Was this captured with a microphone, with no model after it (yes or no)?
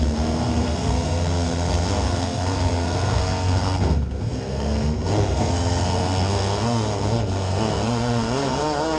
no